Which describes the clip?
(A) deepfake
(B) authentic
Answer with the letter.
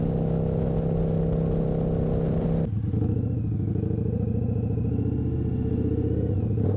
B